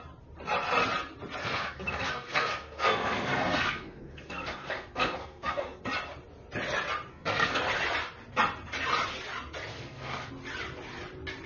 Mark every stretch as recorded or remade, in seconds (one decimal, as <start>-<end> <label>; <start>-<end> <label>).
0.0-1.4 recorded; 1.4-5.8 remade; 5.8-7.1 recorded; 7.1-7.6 remade; 7.6-9.7 recorded; 9.7-10.3 remade; 10.3-11.5 recorded